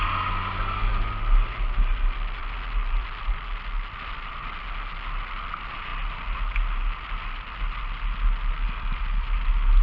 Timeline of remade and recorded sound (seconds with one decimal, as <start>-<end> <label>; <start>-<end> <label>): 0.0-9.8 recorded